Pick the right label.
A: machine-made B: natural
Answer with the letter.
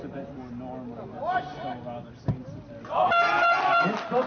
B